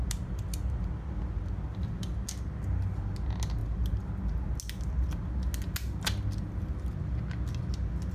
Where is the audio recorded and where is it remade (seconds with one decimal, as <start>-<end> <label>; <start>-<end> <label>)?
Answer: 0.0-1.7 recorded; 1.7-2.6 remade; 2.6-8.1 recorded